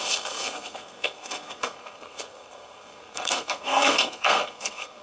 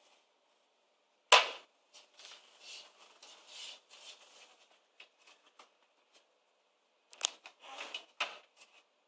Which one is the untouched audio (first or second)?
second